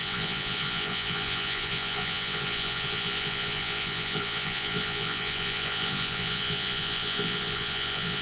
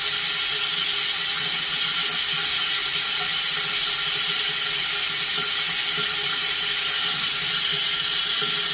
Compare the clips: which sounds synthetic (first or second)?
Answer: first